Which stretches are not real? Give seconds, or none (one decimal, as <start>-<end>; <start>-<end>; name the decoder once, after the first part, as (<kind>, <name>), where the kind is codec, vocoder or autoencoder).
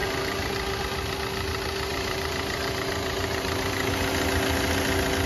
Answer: 1.9-3.9 (vocoder, BigVGAN v2)